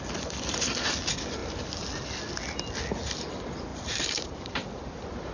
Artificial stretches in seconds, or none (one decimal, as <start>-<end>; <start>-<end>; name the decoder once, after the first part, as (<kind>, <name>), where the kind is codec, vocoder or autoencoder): 3.7-5.3 (vocoder, BigVGAN v2)